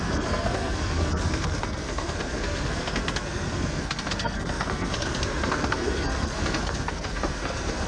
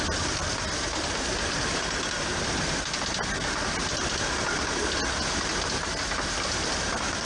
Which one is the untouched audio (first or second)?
second